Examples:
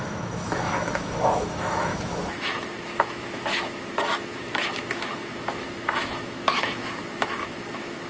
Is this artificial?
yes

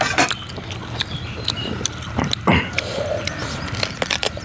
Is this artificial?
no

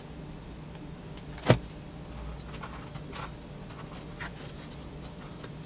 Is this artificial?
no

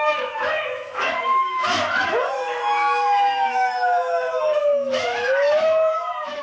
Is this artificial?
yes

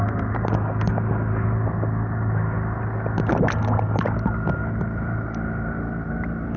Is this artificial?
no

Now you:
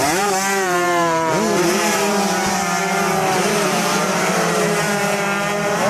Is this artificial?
yes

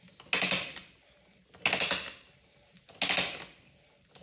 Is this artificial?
no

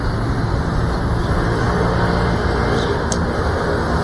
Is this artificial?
no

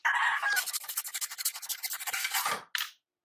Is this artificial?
no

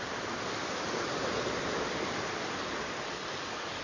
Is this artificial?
no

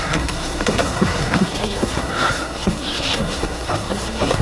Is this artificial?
yes